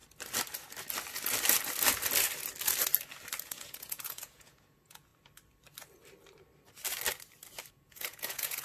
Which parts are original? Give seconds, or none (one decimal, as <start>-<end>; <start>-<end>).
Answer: 0.0-3.4; 5.1-7.7